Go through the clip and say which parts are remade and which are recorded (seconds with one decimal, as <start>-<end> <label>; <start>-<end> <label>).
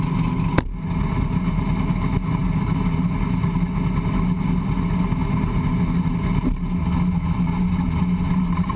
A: 0.0-8.8 recorded